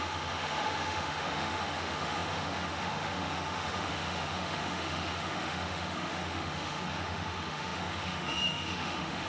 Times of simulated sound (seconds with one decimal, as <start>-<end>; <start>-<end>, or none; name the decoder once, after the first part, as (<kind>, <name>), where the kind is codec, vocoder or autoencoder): 0.0-9.3 (autoencoder, DAC-VAE)